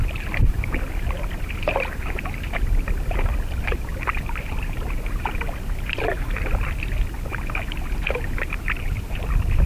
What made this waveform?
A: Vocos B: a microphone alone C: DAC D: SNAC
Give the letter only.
B